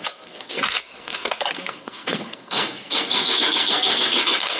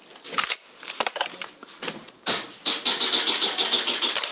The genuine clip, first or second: second